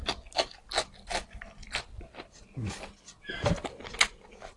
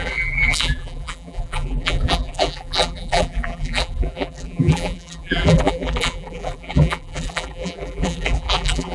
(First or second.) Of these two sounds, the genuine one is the first